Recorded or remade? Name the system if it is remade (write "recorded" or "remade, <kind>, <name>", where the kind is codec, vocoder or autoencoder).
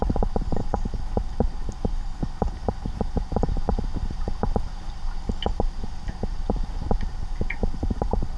recorded